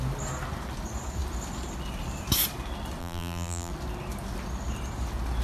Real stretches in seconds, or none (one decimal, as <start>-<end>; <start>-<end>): 0.0-3.0; 3.7-5.4